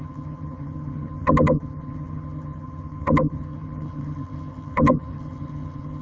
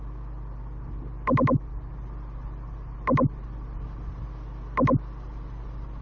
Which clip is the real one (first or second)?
second